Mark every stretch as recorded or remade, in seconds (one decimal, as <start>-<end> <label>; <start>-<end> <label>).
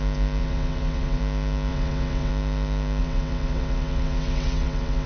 0.0-0.4 recorded; 0.4-1.2 remade; 1.2-1.7 recorded; 1.7-2.3 remade; 2.3-3.0 recorded; 3.0-5.1 remade